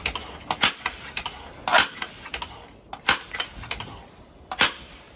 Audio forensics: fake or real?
real